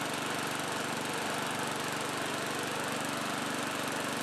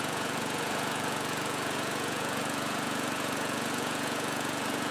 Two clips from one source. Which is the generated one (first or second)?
second